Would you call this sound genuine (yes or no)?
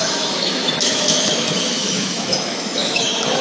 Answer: no